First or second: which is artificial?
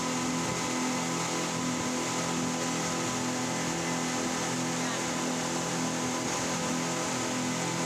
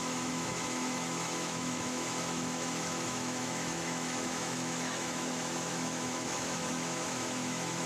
second